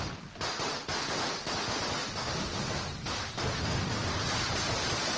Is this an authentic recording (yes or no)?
yes